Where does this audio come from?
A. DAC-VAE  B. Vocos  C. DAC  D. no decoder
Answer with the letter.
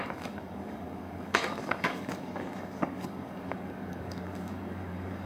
C